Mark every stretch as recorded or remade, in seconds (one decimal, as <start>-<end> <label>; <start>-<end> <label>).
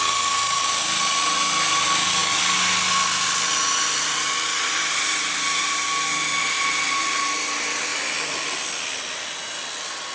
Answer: 0.0-7.9 recorded; 7.9-9.0 remade; 9.0-10.1 recorded